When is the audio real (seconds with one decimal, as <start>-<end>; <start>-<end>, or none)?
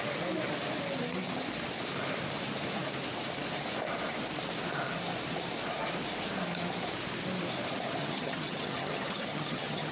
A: 0.0-8.0